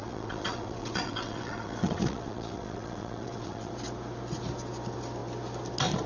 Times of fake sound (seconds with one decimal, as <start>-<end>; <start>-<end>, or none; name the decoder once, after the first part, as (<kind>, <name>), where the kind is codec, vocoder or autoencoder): 0.0-3.7 (vocoder, WaveNeXt)